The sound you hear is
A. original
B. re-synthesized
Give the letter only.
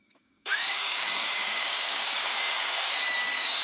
B